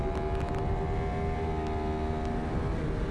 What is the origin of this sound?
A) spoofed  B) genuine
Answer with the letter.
B